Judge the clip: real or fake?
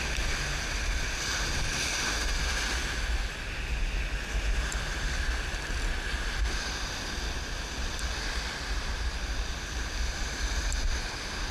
real